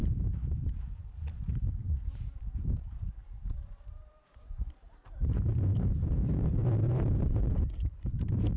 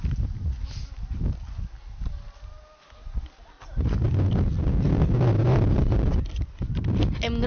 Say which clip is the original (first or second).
second